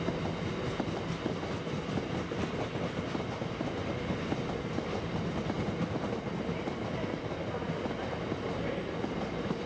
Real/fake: real